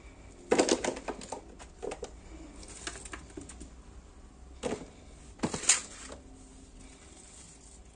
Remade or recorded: recorded